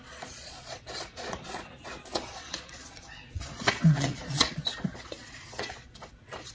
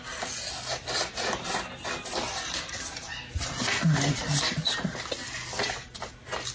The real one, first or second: second